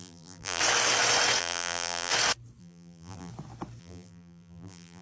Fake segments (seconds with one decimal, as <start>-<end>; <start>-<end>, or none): 0.0-0.6; 1.4-2.1; 2.6-3.3; 3.8-5.0

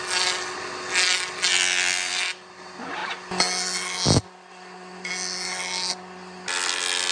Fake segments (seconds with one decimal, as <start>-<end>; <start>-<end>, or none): none

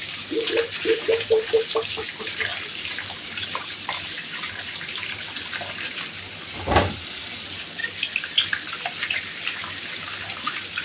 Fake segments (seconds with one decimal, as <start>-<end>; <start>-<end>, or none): 0.0-7.8; 9.3-10.8

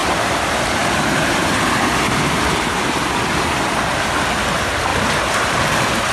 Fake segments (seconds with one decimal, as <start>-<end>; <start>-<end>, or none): 0.0-3.7; 4.9-5.6

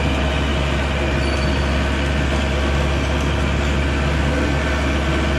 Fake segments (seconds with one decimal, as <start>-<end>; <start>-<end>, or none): none